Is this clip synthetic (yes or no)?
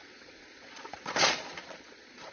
yes